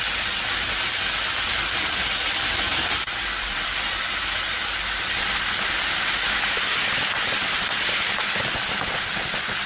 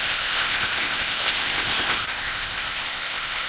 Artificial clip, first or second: second